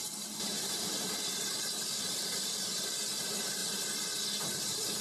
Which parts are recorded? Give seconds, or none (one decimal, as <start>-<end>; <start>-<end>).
3.6-4.4